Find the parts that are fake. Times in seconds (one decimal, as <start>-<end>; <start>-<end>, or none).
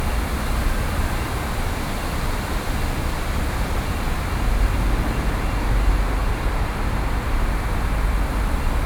6.2-6.7